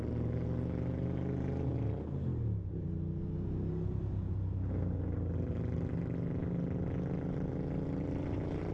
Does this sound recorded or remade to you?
recorded